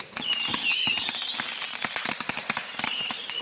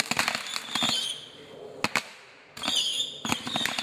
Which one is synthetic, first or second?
first